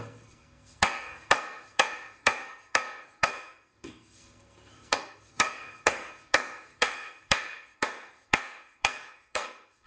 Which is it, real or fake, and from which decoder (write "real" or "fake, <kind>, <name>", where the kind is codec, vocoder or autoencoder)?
fake, codec, SNAC